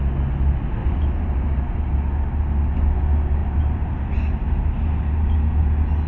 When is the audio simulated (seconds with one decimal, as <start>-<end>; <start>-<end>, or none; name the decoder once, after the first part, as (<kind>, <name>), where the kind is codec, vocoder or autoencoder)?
0.8-1.6 (vocoder, BigVGAN v2); 3.4-4.0